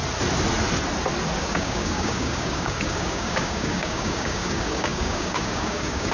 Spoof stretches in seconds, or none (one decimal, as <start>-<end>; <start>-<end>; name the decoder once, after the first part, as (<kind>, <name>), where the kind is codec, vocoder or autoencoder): 1.4-6.1 (codec, DAC)